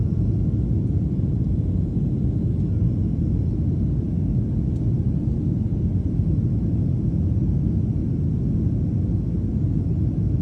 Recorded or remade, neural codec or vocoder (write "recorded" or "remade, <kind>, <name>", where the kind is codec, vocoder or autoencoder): recorded